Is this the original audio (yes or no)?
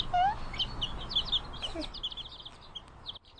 yes